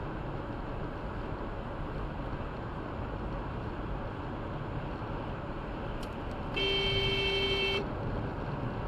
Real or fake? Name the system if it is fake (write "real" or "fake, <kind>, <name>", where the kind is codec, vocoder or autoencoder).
real